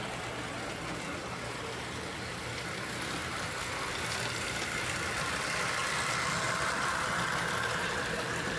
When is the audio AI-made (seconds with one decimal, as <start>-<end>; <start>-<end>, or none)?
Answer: none